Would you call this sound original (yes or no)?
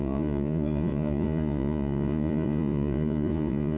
no